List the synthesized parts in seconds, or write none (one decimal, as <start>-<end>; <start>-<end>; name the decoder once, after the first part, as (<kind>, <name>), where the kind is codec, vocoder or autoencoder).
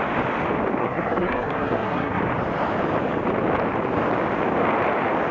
0.8-2.2 (codec, SNAC)